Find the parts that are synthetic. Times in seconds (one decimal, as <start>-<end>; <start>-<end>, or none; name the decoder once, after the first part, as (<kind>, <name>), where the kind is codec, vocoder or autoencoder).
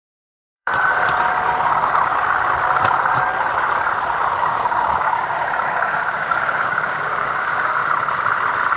0.0-0.7 (codec, DAC); 4.4-7.8